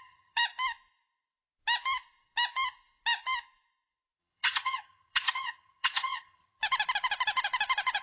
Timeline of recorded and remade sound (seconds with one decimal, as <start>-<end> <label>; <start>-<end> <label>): 0.0-0.4 remade; 0.4-4.2 recorded; 4.2-6.6 remade; 6.6-8.0 recorded